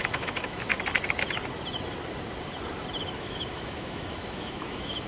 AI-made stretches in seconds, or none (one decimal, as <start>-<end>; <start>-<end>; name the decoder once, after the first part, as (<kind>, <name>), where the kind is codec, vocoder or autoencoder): 0.0-0.7 (autoencoder, DAC-VAE); 3.0-5.1